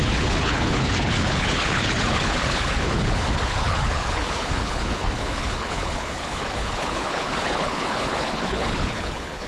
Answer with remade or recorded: remade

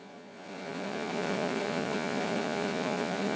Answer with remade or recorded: remade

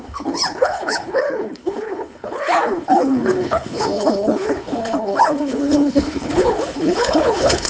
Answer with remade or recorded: remade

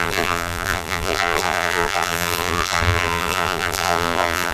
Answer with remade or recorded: remade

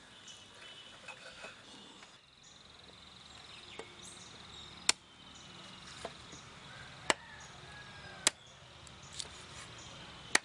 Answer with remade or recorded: recorded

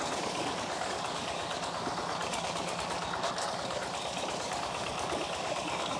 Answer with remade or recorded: remade